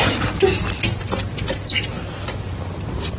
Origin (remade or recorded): recorded